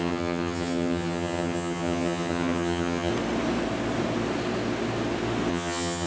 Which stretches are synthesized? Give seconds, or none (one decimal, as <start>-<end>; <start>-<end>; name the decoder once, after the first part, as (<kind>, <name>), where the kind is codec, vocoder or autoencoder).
0.0-3.1 (vocoder, HiFi-GAN); 5.5-6.1

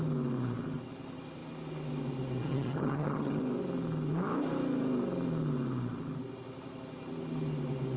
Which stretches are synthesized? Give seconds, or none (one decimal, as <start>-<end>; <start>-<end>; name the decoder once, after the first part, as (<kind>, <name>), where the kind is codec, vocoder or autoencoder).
2.4-3.4 (vocoder, HiFi-GAN)

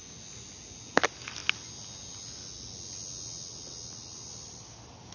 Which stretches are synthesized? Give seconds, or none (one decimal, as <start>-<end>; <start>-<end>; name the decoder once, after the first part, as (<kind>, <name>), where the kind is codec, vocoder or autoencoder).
none

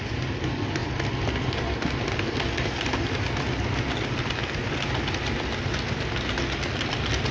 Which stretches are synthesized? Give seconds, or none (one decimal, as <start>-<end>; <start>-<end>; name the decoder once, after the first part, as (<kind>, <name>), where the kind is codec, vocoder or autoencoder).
none

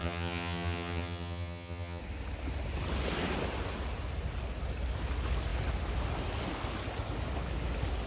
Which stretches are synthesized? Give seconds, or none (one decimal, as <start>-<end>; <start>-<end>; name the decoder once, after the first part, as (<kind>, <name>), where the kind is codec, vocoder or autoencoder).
0.0-2.0 (vocoder, HiFi-GAN)